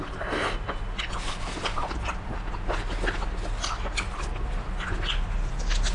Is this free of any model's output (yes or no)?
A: yes